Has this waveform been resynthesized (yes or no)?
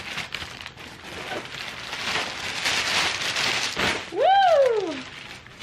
no